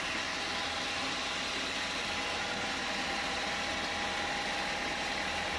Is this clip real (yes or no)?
yes